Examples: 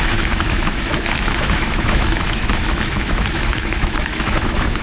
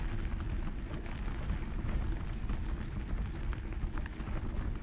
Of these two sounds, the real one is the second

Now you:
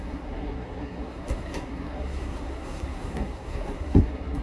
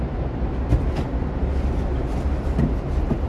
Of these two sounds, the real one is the second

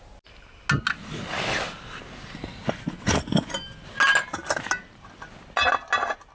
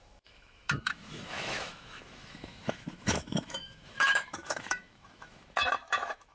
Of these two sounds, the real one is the first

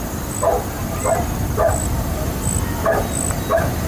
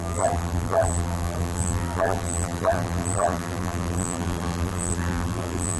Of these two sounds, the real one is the first